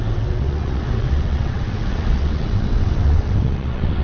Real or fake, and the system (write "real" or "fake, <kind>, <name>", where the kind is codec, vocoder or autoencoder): fake, vocoder, WaveNeXt